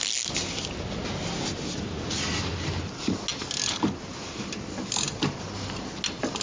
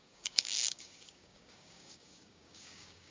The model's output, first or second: second